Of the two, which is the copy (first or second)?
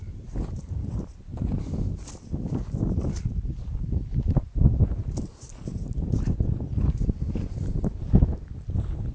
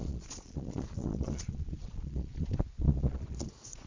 second